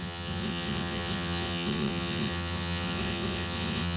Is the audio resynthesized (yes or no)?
yes